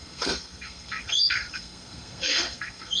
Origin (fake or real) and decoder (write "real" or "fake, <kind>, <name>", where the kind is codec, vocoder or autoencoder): fake, codec, SNAC